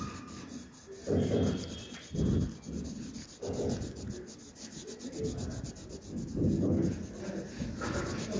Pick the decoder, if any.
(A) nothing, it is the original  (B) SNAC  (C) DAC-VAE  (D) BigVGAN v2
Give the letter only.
A